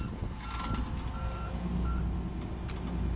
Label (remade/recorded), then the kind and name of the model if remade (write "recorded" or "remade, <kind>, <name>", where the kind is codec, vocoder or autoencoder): recorded